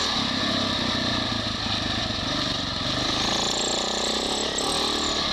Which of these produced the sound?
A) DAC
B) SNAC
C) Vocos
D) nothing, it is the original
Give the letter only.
D